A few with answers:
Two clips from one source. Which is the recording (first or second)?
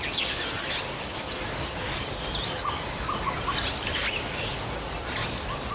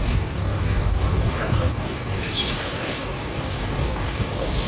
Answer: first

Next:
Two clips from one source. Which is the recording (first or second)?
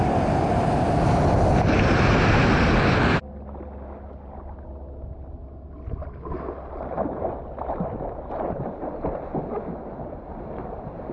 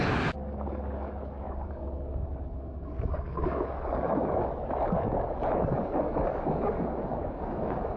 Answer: first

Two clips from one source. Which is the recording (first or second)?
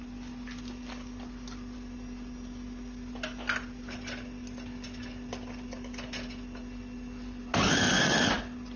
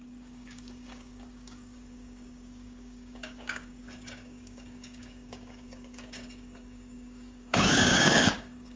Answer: first